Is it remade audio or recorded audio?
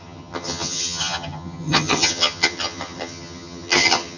remade